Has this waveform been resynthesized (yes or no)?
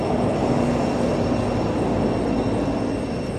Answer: no